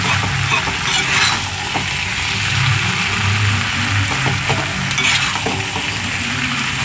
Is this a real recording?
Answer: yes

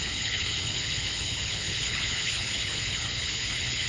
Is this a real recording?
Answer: no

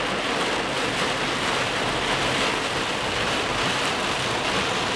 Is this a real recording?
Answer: yes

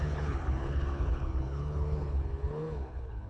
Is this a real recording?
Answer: no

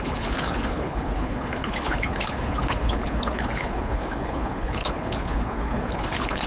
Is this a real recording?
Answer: no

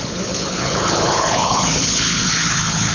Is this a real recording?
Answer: no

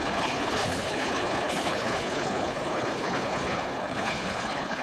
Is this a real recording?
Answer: no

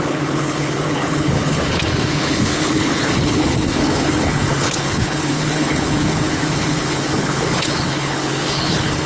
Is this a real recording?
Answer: no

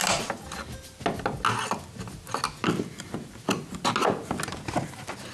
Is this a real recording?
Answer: yes